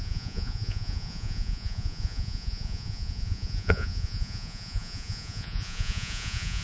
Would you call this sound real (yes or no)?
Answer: no